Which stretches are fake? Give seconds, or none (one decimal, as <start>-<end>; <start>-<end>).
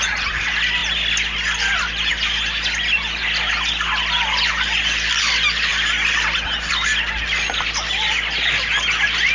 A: none